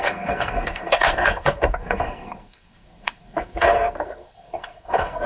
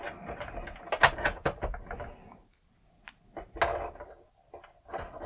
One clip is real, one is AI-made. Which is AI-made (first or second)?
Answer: first